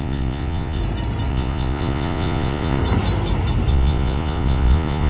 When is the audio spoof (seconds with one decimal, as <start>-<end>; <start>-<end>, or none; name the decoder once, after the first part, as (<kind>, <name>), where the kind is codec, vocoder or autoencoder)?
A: 0.0-0.8 (vocoder, Vocos); 1.3-2.8; 3.7-5.1